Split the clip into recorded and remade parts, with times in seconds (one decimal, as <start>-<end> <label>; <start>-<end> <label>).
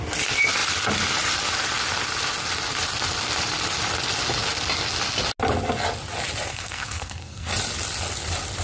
0.0-6.5 recorded; 6.5-7.5 remade; 7.5-8.6 recorded